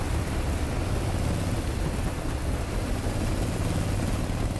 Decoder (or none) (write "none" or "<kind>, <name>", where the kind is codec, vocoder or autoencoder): none